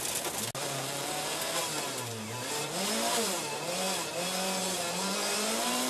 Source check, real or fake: real